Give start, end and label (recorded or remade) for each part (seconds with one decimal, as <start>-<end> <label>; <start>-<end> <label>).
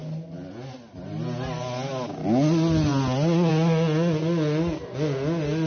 0.0-5.7 recorded